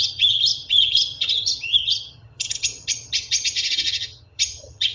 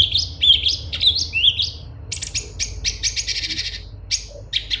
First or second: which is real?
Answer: second